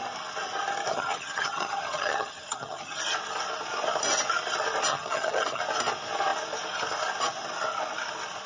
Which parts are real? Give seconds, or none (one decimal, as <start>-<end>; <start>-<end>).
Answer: 0.0-0.9; 3.0-4.9; 5.6-8.5